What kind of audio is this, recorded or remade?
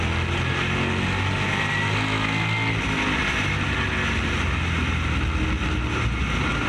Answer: recorded